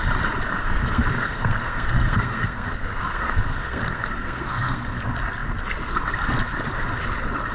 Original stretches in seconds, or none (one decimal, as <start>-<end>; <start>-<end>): 0.0-0.5; 5.0-7.5